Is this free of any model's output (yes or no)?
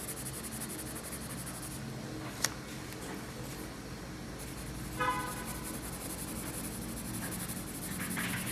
yes